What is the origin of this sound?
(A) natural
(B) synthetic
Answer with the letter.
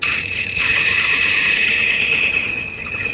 B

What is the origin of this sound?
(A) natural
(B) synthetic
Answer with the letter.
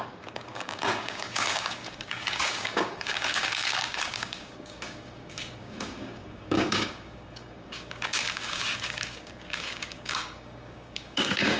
B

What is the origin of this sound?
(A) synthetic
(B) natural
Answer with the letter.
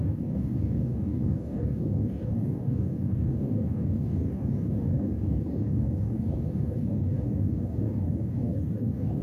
A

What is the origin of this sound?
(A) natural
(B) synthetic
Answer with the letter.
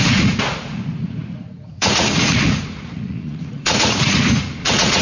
B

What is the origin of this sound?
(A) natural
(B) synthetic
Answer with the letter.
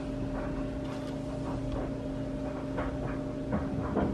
A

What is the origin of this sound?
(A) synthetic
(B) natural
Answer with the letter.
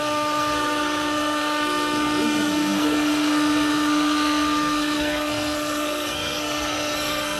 A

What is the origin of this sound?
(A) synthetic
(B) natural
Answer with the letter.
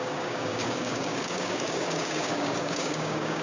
A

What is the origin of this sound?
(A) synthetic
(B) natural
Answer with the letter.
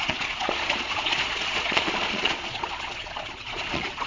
A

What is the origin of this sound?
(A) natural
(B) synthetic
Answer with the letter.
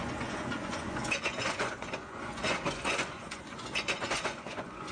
B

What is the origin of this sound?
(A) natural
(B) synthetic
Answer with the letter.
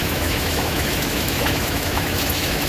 B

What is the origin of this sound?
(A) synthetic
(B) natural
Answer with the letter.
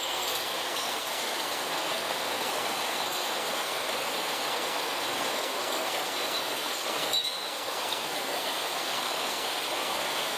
A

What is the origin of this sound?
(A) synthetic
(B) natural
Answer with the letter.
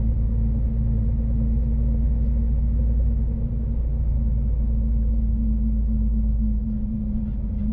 B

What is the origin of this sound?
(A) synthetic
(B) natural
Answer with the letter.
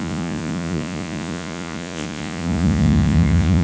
A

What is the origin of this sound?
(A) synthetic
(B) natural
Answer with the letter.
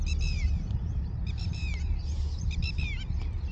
B